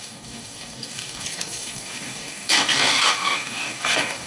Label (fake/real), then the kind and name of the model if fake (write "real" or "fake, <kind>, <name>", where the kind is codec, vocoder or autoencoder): fake, codec, DAC